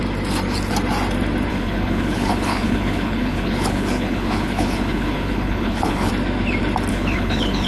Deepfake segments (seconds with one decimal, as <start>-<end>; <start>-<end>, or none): 1.5-6.1; 6.9-7.7